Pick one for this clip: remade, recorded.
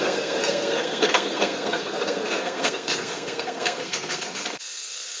remade